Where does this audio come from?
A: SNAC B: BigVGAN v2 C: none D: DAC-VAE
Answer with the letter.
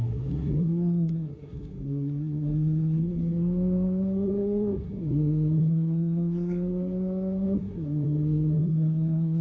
A